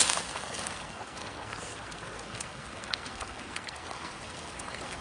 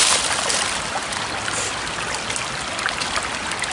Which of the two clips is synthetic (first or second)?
first